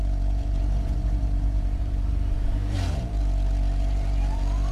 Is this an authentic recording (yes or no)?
no